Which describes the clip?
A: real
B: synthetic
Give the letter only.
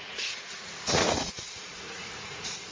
B